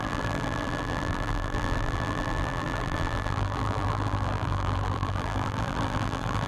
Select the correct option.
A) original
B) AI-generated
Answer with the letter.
B